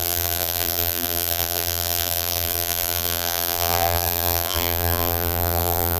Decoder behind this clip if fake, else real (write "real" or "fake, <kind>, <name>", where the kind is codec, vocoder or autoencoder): fake, vocoder, BigVGAN v2